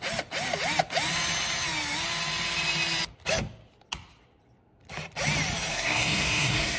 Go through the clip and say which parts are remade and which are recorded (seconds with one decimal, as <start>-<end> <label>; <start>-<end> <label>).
0.0-5.7 recorded; 5.7-6.8 remade